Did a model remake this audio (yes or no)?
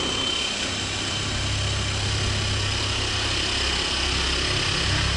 no